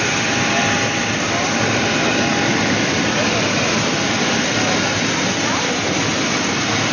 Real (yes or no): yes